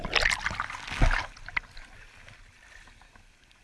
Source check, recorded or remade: recorded